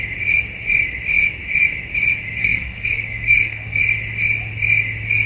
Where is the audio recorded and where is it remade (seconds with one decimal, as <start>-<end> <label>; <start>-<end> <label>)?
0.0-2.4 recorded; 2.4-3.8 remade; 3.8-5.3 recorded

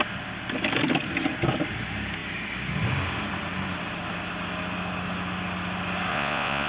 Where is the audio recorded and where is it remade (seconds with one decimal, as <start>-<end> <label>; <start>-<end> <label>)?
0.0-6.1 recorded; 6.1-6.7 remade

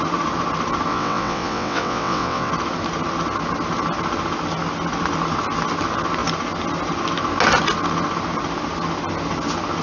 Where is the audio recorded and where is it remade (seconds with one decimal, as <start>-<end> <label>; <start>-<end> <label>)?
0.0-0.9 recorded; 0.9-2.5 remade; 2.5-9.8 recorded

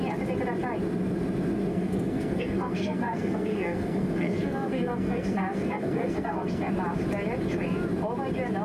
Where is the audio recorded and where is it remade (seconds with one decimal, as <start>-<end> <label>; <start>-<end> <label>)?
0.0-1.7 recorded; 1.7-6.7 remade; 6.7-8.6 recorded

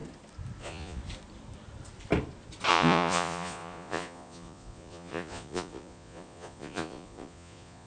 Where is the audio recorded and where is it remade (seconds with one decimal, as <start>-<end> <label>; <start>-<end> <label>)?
0.0-0.6 recorded; 0.6-1.0 remade; 1.0-2.7 recorded; 2.7-7.9 remade

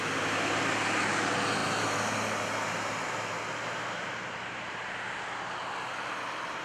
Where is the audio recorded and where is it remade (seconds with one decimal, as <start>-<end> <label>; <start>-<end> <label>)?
0.0-1.6 recorded; 1.6-4.9 remade; 4.9-6.6 recorded

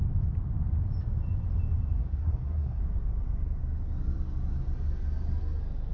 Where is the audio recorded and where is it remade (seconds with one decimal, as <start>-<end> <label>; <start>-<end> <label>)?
0.0-2.0 recorded; 2.0-2.8 remade; 2.8-5.9 recorded

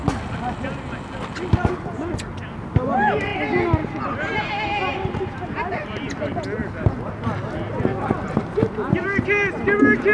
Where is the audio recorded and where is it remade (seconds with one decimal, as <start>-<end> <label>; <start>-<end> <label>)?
0.0-10.1 recorded